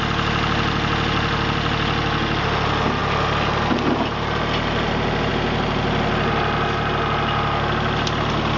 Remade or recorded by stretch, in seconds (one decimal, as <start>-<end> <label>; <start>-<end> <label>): 0.0-8.6 recorded